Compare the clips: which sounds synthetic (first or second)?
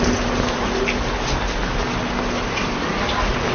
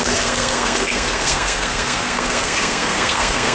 second